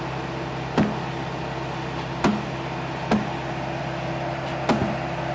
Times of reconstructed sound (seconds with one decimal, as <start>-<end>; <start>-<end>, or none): none